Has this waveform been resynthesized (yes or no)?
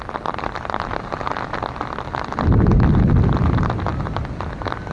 no